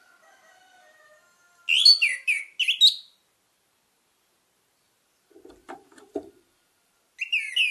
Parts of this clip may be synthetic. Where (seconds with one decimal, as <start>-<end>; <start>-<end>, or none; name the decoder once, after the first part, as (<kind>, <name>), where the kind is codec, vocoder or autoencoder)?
5.6-6.9 (vocoder, BigVGAN v2)